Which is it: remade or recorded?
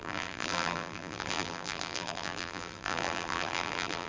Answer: remade